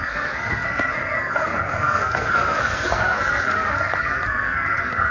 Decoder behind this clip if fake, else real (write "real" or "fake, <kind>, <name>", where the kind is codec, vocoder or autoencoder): fake, codec, SNAC